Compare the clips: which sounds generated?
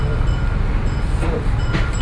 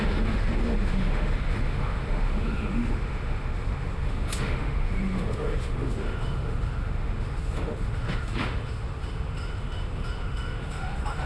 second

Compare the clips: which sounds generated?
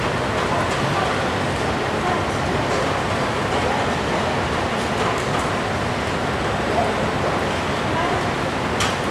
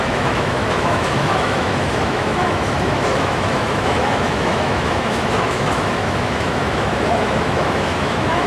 second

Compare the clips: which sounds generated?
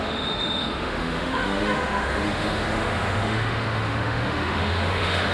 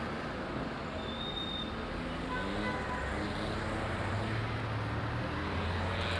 first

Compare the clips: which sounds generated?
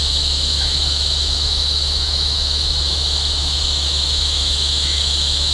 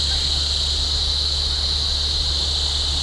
first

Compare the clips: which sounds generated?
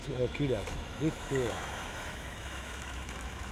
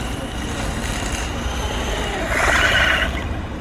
first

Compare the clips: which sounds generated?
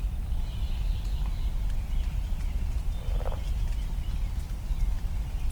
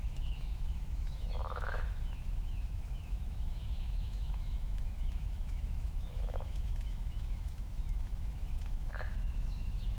second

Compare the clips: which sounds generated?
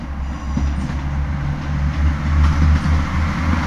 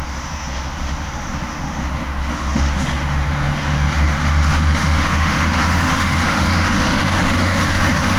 second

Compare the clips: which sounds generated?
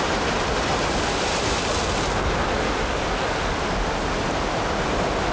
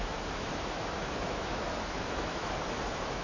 second